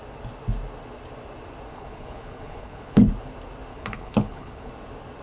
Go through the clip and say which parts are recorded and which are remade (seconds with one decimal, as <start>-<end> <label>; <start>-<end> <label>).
0.0-1.7 recorded; 1.7-3.1 remade; 3.1-3.7 recorded; 3.7-4.7 remade; 4.7-5.2 recorded